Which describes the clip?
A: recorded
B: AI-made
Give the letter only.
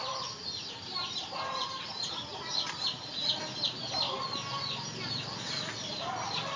A